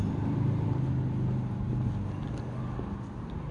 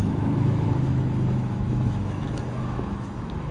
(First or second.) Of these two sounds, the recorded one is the first